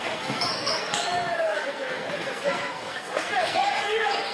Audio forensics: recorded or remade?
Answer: remade